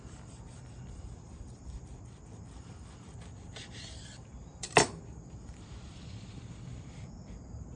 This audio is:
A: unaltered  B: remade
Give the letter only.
B